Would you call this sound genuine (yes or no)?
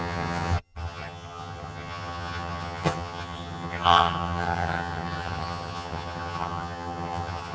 no